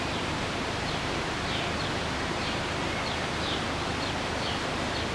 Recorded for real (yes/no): no